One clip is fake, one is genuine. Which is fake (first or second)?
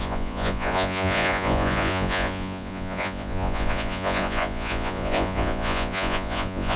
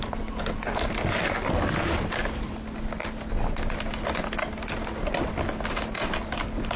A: first